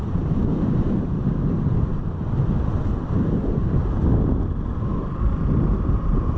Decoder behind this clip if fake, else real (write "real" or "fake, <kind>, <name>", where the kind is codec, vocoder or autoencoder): fake, vocoder, BigVGAN v2